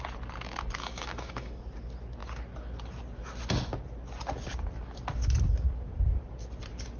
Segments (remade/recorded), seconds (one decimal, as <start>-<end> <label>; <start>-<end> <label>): 0.0-0.8 recorded; 0.8-1.6 remade; 1.6-7.0 recorded